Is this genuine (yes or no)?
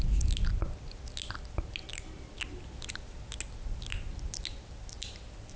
yes